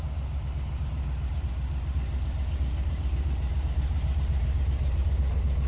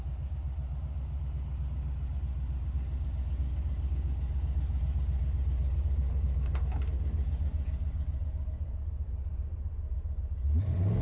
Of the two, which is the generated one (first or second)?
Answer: first